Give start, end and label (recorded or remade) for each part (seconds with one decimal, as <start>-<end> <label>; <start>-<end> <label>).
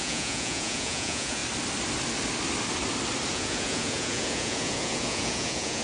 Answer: 0.0-1.4 remade; 1.4-3.3 recorded; 3.3-5.8 remade